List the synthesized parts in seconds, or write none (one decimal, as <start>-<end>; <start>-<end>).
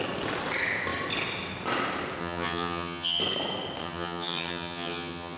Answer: 2.2-3.2; 3.8-5.4